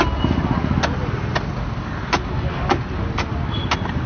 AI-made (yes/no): no